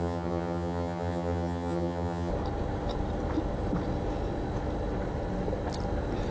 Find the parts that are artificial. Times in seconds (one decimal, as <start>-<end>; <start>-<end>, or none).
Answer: 0.0-2.3